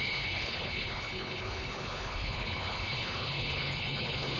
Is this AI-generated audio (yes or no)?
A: yes